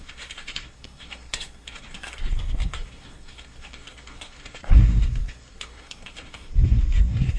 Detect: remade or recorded remade